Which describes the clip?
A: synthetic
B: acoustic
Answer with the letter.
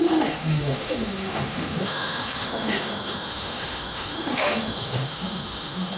A